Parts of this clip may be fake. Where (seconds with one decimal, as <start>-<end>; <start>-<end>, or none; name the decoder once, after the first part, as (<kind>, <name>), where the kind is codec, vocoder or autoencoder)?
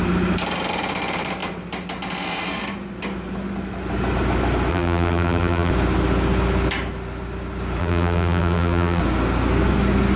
4.7-5.7 (vocoder, BigVGAN v2); 7.8-9.0